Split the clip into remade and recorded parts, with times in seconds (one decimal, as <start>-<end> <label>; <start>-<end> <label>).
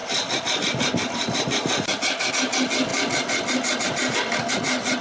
0.0-5.0 recorded